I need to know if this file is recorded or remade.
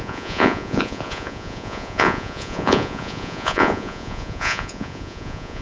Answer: remade